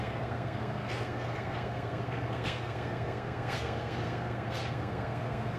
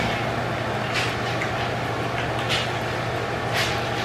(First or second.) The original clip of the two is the second